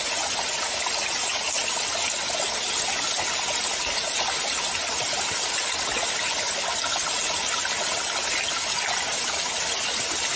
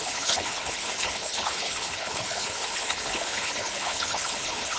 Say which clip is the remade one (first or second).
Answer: second